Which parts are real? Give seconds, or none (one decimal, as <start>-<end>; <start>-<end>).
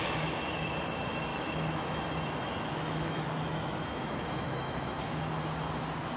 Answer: 0.7-1.3; 5.0-6.2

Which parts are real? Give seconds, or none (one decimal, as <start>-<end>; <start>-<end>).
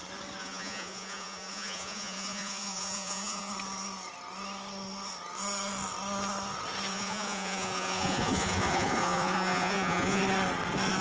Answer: 0.0-0.4; 3.5-6.9; 10.2-11.0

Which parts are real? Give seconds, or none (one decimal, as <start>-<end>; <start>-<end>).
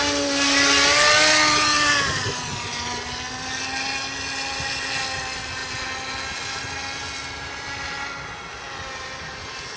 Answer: 0.0-9.8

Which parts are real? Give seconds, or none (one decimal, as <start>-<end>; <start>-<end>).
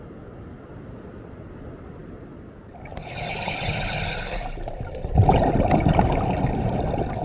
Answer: 0.0-7.2